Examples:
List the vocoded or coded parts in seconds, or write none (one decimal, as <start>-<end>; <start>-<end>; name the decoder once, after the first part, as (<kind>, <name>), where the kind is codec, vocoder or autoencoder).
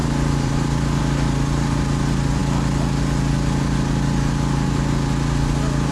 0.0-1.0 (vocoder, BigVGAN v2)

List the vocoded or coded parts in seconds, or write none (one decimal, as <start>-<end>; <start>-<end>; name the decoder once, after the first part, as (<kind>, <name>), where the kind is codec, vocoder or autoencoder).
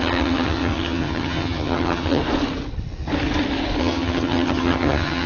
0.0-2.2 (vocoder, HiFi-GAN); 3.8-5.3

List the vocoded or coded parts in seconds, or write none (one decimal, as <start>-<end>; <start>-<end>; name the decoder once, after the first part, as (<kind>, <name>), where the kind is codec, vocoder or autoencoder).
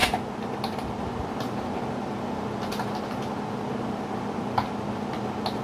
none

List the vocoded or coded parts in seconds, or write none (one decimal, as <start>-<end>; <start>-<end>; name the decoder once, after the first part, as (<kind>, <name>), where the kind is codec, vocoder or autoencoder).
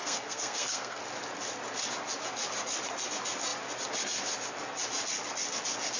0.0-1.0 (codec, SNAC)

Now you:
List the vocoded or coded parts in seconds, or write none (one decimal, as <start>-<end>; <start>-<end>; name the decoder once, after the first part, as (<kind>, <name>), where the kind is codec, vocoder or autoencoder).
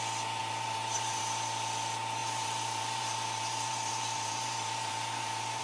0.4-1.2 (vocoder, BigVGAN v2); 2.2-5.6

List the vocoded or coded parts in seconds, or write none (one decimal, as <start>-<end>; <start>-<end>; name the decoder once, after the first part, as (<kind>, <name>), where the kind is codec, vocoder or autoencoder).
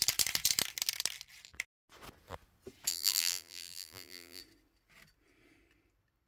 2.9-4.4 (vocoder, BigVGAN v2)